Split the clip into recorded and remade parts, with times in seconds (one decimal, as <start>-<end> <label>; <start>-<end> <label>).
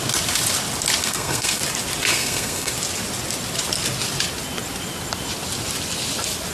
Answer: 0.0-1.0 recorded; 1.0-1.6 remade; 1.6-2.1 recorded; 2.1-2.7 remade; 2.7-6.5 recorded